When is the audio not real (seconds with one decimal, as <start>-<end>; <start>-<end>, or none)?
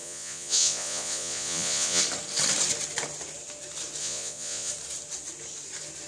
0.0-2.0; 4.0-4.7